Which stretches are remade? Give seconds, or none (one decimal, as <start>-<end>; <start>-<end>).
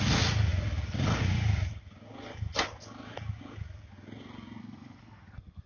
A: 4.6-5.7